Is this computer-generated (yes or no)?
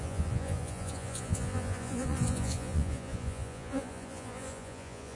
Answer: yes